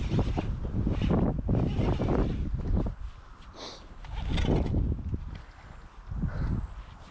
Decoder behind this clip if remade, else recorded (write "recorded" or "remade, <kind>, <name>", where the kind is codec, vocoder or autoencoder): recorded